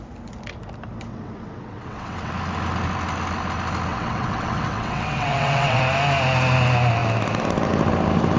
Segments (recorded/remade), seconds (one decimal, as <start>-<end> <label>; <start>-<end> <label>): 0.0-1.1 recorded; 1.1-2.3 remade; 2.3-3.9 recorded; 3.9-5.8 remade; 5.8-8.4 recorded